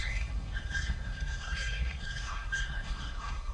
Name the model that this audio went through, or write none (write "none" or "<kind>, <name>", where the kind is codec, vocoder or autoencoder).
codec, SNAC